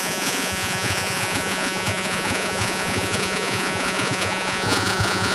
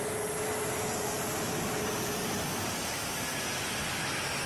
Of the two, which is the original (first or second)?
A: second